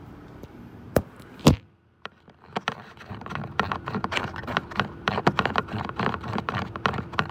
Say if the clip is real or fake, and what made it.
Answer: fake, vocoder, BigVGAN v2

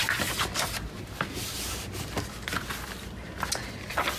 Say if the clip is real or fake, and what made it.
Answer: real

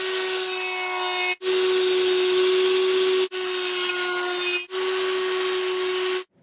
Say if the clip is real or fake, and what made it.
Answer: real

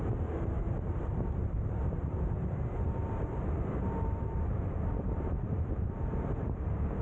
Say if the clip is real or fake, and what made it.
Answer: fake, vocoder, BigVGAN v2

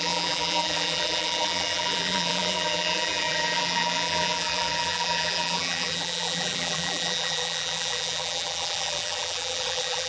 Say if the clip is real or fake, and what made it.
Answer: fake, vocoder, BigVGAN v2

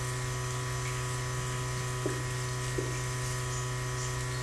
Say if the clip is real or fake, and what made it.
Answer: real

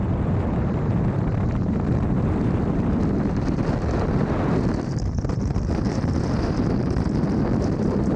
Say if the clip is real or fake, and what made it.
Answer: fake, vocoder, BigVGAN v2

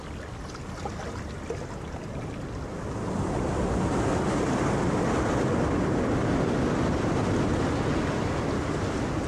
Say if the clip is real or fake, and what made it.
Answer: real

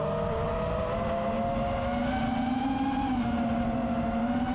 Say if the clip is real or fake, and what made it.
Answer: real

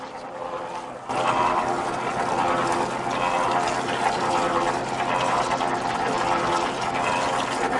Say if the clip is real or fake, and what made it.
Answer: real